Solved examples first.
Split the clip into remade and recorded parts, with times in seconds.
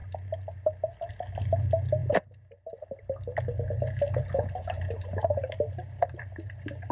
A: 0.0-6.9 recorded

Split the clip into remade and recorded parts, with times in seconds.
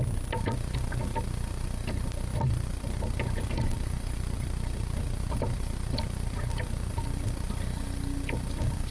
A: 0.0-2.3 recorded; 2.3-6.9 remade; 6.9-8.9 recorded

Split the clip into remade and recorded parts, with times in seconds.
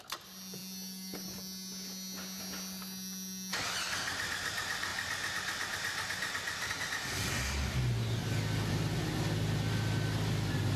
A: 0.0-10.8 recorded